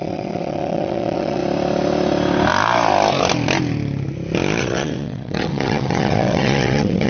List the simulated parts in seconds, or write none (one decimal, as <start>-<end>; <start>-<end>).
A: 0.0-1.4; 4.6-7.1